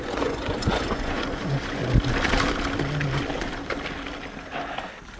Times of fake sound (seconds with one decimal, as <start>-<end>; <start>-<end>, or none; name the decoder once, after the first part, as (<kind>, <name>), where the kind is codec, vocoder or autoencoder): 0.0-1.8 (vocoder, Vocos)